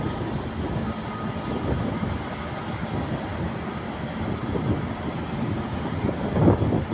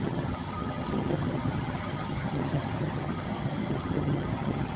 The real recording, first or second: first